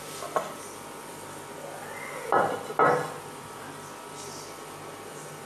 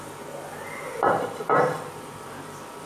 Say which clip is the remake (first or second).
second